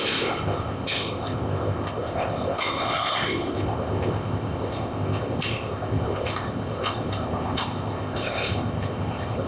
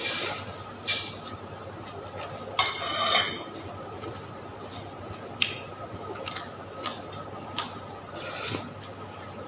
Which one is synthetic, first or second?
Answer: first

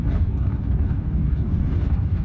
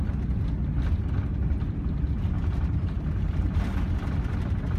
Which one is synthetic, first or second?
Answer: first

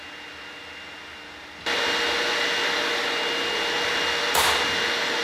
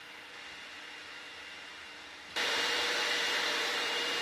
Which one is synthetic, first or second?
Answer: second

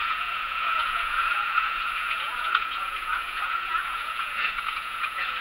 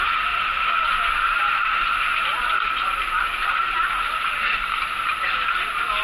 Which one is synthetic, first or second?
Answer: first